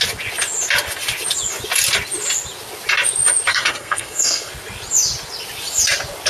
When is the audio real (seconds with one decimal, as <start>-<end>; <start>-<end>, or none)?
0.0-3.5; 4.5-6.3